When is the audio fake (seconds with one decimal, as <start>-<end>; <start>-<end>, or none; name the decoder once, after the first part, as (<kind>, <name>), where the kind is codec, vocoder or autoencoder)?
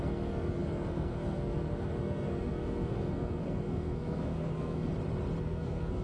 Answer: 0.0-4.9 (codec, SNAC); 5.4-6.0